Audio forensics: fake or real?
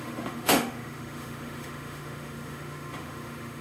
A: fake